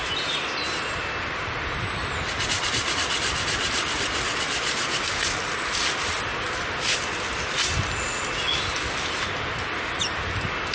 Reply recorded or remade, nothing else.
recorded